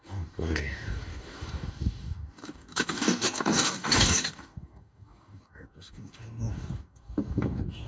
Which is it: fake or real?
fake